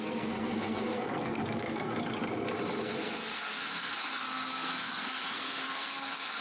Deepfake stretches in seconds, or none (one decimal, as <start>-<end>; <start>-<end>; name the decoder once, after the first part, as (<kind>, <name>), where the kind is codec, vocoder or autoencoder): 0.0-1.9 (codec, SNAC); 2.8-6.4